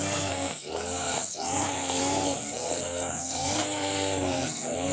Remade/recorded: remade